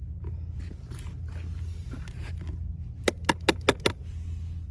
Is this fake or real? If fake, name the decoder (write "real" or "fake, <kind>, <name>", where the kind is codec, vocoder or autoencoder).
real